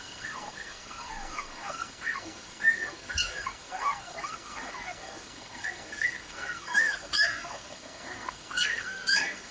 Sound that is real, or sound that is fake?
fake